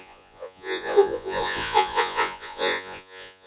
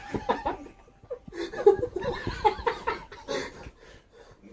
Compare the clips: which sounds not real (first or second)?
first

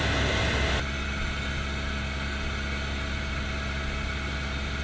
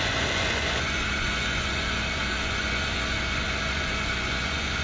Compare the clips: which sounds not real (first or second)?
second